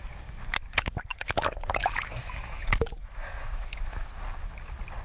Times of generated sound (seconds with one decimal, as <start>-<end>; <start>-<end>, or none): 1.1-4.1